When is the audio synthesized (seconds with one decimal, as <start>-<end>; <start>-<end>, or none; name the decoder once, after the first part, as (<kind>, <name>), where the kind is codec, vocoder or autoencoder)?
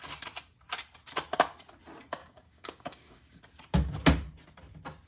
2.2-3.4 (codec, DAC)